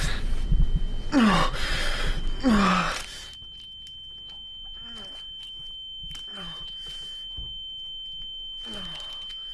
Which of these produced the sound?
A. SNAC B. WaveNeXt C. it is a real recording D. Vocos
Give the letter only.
C